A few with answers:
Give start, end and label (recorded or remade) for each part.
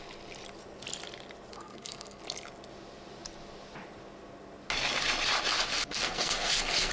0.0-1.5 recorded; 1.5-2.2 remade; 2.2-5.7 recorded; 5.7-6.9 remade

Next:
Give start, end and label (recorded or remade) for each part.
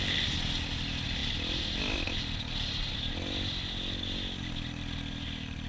0.0-5.7 recorded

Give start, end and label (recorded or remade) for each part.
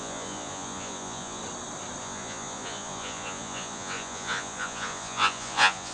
0.0-1.4 remade; 1.4-2.0 recorded; 2.0-5.9 remade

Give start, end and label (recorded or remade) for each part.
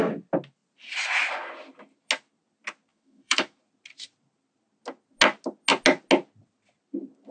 0.0-2.9 recorded; 2.9-3.6 remade; 3.6-7.3 recorded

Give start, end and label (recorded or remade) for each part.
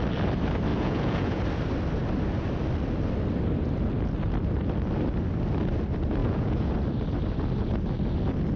0.0-0.7 recorded; 0.7-1.4 remade; 1.4-6.2 recorded; 6.2-6.7 remade; 6.7-8.6 recorded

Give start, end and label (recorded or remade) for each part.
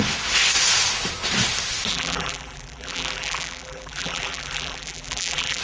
0.0-1.9 recorded; 1.9-5.6 remade